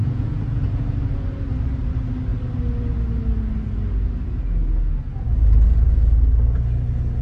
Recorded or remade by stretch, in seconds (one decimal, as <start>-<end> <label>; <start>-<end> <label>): 0.0-0.8 remade; 0.8-7.2 recorded